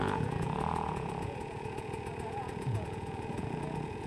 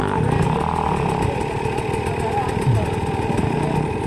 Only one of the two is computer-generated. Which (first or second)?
first